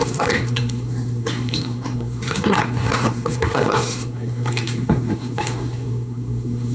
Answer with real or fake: fake